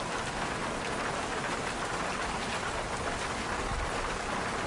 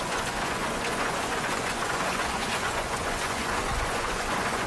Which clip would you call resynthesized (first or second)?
second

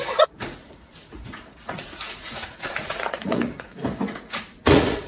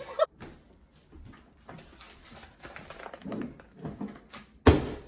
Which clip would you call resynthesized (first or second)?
first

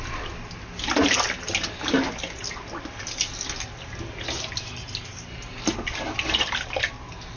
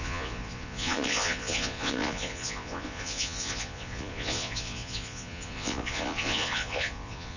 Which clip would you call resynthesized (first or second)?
second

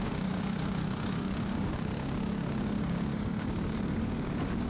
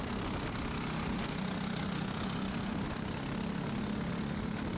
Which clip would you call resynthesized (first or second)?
first